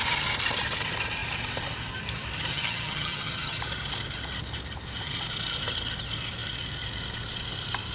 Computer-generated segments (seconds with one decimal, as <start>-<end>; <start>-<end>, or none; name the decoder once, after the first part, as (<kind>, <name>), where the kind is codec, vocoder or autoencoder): 2.5-3.6 (vocoder, HiFi-GAN)